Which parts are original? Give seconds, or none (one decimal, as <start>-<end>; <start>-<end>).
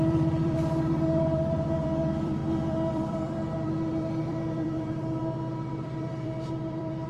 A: 5.2-5.7